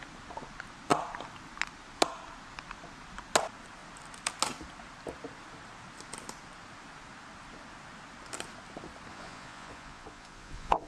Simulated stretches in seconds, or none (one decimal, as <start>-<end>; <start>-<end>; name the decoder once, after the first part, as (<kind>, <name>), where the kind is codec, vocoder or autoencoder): 9.1-10.9 (vocoder, Vocos)